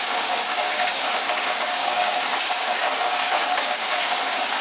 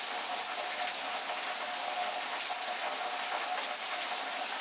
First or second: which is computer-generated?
first